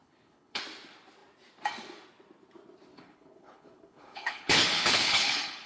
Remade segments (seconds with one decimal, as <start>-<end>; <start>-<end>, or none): 0.0-0.6; 2.9-5.7